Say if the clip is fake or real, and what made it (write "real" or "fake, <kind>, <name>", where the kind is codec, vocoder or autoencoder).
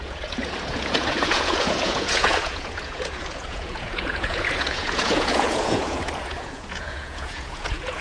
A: fake, vocoder, Vocos